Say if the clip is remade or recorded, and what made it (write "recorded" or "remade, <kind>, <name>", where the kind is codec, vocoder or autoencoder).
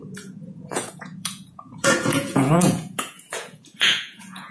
remade, vocoder, Vocos